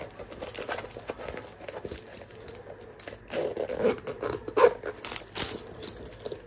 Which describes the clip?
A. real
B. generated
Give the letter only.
A